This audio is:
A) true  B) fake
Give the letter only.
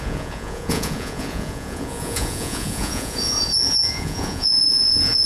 B